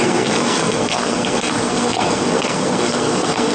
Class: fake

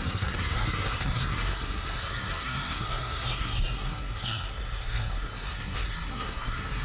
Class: fake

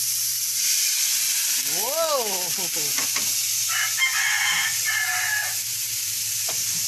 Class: real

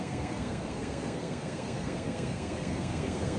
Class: fake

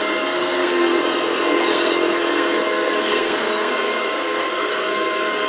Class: fake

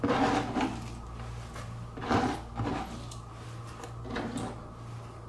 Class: real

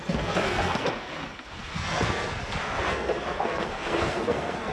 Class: fake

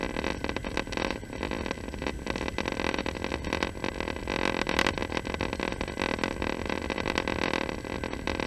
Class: real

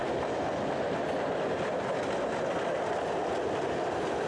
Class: real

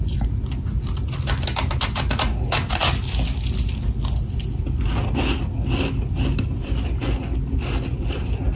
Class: real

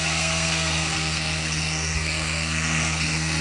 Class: fake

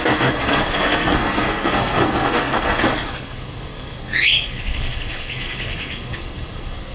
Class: fake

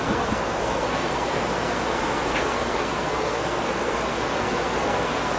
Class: fake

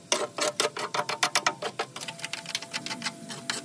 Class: real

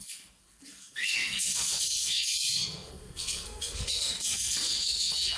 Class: fake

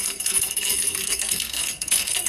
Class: fake